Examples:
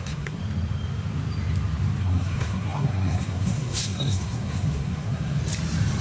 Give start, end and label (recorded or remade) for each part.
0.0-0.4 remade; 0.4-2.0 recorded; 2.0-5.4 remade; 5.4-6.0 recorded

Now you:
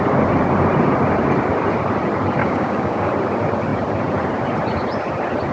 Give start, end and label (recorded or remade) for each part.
0.0-2.4 recorded; 2.4-3.1 remade; 3.1-5.5 recorded

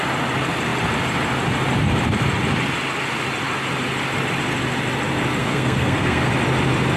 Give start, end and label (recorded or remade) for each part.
0.0-5.4 recorded; 5.4-6.3 remade; 6.3-7.0 recorded